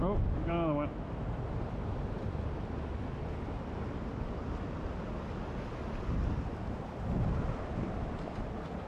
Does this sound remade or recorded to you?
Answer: recorded